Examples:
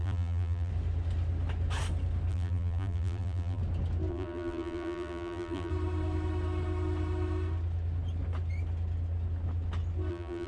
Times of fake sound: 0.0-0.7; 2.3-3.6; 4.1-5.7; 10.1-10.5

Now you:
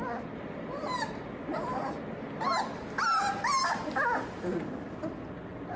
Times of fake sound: none